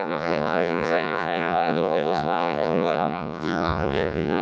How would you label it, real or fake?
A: fake